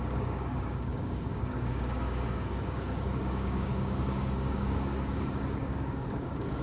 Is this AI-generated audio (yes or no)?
yes